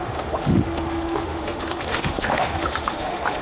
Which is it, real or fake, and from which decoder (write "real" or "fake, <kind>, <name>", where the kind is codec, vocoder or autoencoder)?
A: fake, autoencoder, DAC-VAE